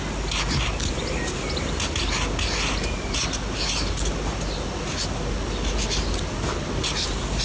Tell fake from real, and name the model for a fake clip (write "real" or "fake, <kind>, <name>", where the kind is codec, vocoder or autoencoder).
real